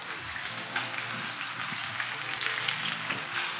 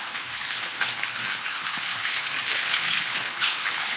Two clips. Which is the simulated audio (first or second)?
second